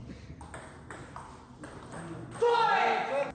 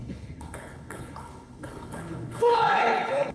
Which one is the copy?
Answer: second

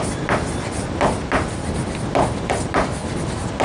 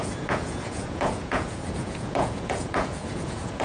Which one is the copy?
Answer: second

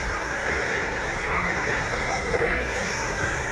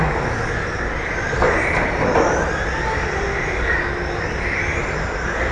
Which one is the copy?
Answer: first